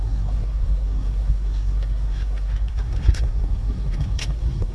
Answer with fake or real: fake